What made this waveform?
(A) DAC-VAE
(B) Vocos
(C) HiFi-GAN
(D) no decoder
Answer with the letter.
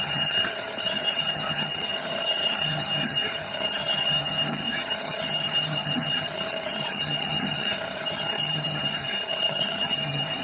C